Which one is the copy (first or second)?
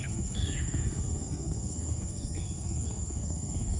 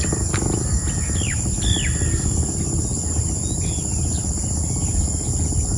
first